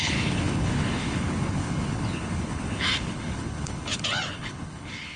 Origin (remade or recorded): remade